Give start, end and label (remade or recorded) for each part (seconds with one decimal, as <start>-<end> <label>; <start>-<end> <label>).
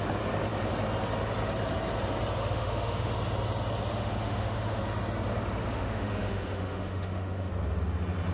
0.0-2.4 recorded; 2.4-3.1 remade; 3.1-3.9 recorded; 3.9-4.8 remade; 4.8-5.6 recorded; 5.6-7.5 remade; 7.5-8.3 recorded